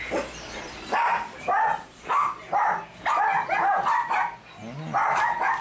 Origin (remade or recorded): recorded